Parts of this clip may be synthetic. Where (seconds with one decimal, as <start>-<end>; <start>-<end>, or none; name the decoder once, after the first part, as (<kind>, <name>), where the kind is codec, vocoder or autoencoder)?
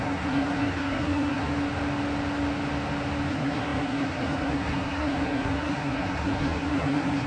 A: 0.0-1.5 (codec, SNAC); 3.3-7.3